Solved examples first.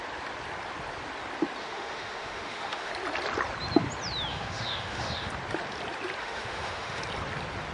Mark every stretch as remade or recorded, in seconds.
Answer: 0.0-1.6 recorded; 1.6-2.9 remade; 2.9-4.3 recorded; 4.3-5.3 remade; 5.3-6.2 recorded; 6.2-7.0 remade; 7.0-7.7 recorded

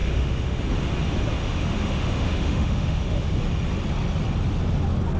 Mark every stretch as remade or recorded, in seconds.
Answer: 0.0-0.6 remade; 0.6-1.4 recorded; 1.4-3.4 remade; 3.4-5.2 recorded

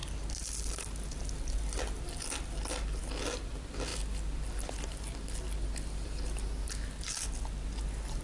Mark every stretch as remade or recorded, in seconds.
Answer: 0.0-8.2 recorded

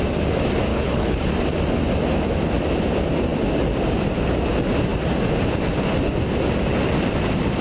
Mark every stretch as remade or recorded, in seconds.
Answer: 0.0-0.7 recorded; 0.7-1.3 remade; 1.3-7.6 recorded

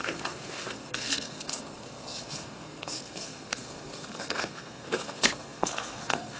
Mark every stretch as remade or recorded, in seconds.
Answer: 0.0-6.4 remade

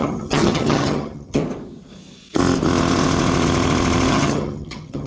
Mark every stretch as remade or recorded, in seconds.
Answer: 0.0-1.4 remade; 1.4-4.1 recorded; 4.1-5.1 remade

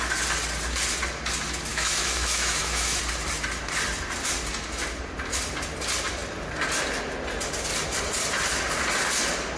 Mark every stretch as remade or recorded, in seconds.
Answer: 0.0-1.7 recorded; 1.7-3.0 remade; 3.0-9.6 recorded

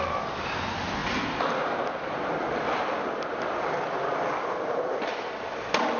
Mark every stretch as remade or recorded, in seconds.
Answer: 0.0-6.0 recorded